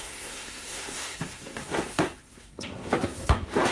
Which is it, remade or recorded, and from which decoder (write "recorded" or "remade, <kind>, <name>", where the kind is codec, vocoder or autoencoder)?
remade, codec, SNAC